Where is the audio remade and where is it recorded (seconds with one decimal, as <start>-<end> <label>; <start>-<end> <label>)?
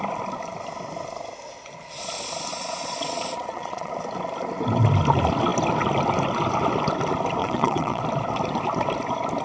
0.0-2.5 recorded; 2.5-3.9 remade; 3.9-7.4 recorded; 7.4-8.0 remade; 8.0-9.4 recorded